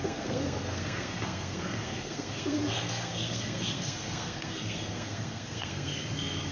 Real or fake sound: fake